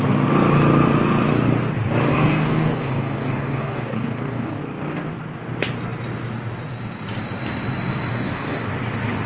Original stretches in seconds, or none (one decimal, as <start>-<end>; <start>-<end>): 0.0-2.1; 4.6-8.1; 8.7-9.3